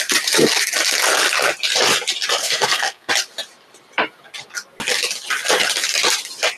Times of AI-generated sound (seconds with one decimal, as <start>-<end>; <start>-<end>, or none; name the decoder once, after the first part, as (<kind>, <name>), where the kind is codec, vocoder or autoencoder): 2.4-3.1 (codec, SNAC)